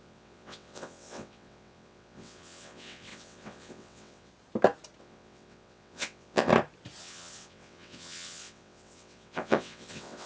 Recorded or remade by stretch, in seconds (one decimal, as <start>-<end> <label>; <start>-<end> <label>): 0.0-4.3 remade; 4.3-5.0 recorded; 5.0-6.5 remade; 6.5-7.0 recorded; 7.0-10.3 remade